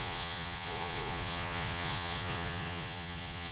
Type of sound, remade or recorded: remade